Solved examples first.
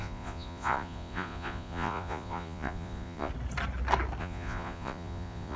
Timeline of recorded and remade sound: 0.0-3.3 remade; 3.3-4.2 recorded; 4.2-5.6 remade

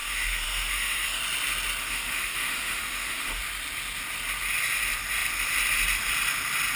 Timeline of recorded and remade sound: 0.0-1.2 remade; 1.2-1.8 recorded; 1.8-3.4 remade; 3.4-6.8 recorded

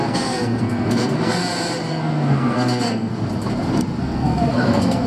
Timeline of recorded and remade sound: 0.0-1.4 remade; 1.4-1.9 recorded; 1.9-3.1 remade; 3.1-4.0 recorded; 4.0-5.1 remade

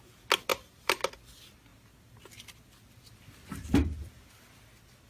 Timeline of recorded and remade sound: 0.0-0.5 recorded; 0.5-1.1 remade; 1.1-5.1 recorded

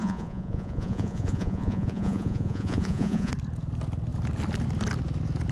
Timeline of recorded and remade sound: 0.0-3.3 remade; 3.3-5.5 recorded